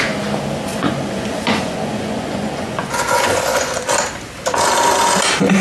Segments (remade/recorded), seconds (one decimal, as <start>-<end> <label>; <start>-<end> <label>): 0.0-0.7 recorded; 0.7-3.9 remade; 3.9-5.6 recorded